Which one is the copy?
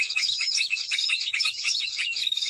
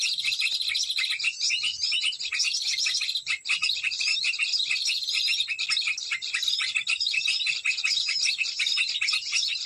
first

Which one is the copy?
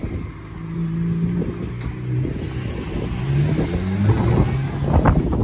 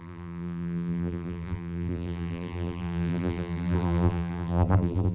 second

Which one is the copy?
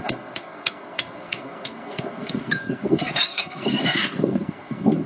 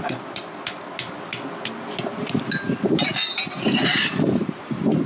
first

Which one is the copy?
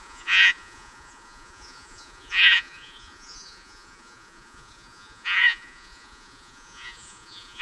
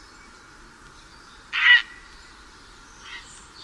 first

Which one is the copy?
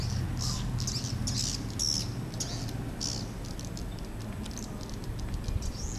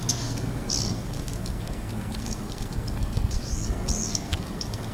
second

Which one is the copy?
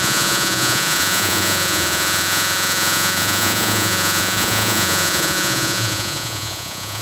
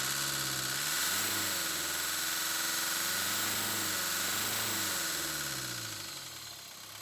first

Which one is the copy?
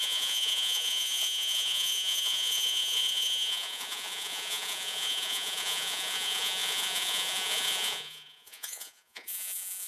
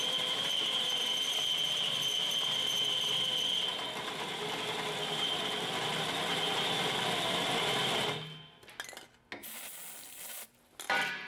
first